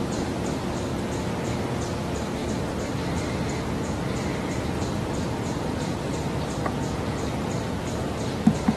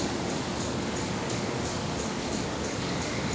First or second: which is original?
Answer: first